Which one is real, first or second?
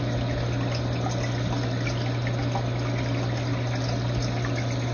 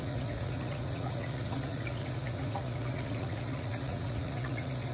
first